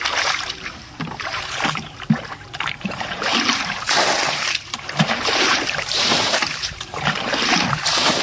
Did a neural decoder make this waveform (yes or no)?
yes